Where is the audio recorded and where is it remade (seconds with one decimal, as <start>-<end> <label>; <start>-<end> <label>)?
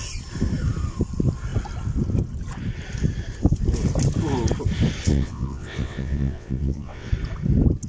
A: 0.0-5.1 recorded; 5.1-7.1 remade; 7.1-7.9 recorded